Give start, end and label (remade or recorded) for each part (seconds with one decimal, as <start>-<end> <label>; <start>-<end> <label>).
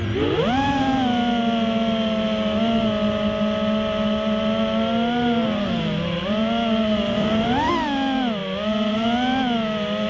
0.0-7.2 recorded; 7.2-7.7 remade; 7.7-10.1 recorded